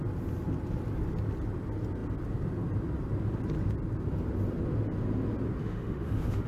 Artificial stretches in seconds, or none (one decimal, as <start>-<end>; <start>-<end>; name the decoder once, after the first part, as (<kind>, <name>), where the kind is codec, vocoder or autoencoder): 5.6-6.5 (autoencoder, DAC-VAE)

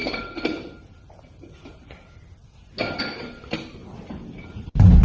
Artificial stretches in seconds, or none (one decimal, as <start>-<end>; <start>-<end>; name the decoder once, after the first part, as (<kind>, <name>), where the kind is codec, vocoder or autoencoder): none

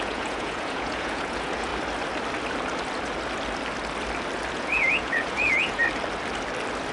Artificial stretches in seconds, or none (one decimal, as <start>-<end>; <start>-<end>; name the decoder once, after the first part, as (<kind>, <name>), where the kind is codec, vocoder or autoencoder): 0.0-1.7 (vocoder, Vocos); 4.5-5.8

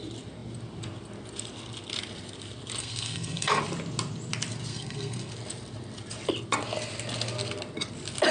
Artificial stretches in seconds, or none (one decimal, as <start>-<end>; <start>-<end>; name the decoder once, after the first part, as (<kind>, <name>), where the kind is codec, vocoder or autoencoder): 2.8-3.6 (codec, SNAC); 4.7-5.3

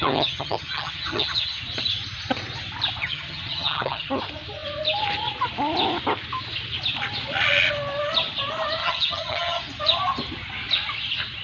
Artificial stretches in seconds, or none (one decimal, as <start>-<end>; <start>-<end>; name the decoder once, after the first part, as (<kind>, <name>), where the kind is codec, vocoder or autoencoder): 0.0-1.6 (vocoder, HiFi-GAN); 3.0-4.1; 8.8-9.6

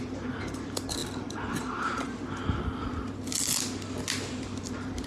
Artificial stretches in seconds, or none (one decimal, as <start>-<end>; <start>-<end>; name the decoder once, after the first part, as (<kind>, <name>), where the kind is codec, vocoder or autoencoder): none

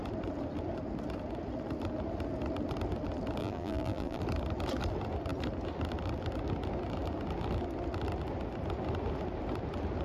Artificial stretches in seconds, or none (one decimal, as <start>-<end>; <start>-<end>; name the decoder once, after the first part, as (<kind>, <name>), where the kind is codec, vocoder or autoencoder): 3.4-4.2 (vocoder, BigVGAN v2)

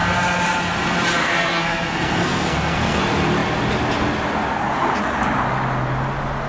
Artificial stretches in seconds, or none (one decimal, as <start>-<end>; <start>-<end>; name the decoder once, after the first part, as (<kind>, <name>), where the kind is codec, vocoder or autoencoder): 1.2-3.0 (codec, SNAC)